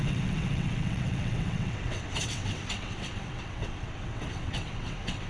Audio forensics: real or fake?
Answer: fake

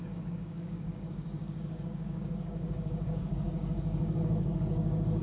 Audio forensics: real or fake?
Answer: fake